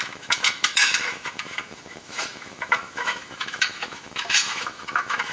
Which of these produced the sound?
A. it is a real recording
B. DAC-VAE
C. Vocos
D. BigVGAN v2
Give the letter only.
B